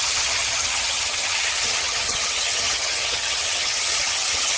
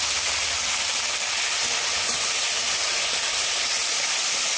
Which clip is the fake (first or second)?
first